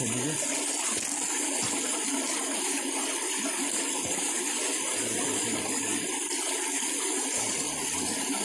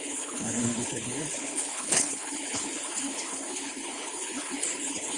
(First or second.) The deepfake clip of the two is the second